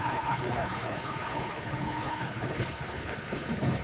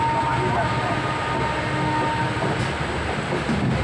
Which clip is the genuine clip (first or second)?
second